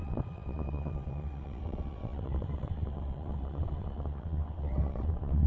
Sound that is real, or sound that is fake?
fake